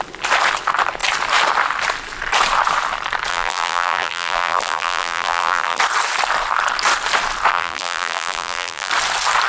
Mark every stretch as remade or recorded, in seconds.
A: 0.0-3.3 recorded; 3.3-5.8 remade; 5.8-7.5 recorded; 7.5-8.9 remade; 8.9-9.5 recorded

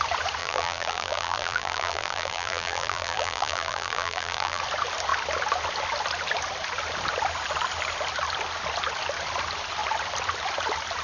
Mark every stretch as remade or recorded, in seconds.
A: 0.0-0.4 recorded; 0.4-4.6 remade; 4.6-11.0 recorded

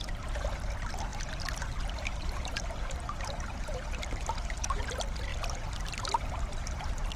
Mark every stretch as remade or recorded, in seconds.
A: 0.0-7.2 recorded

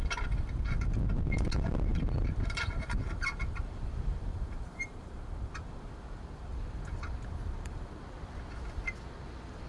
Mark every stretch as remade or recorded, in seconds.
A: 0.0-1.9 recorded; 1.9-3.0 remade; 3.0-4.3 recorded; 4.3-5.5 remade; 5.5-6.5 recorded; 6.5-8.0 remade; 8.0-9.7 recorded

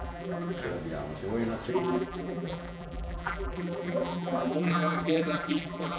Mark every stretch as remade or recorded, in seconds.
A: 0.0-0.6 remade; 0.6-1.7 recorded; 1.7-6.0 remade

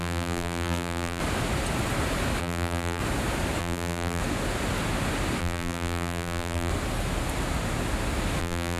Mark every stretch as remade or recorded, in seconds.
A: 0.0-1.2 remade; 1.2-2.4 recorded; 2.4-3.0 remade; 3.0-3.6 recorded; 3.6-4.2 remade; 4.2-5.4 recorded; 5.4-6.7 remade; 6.7-8.4 recorded; 8.4-8.8 remade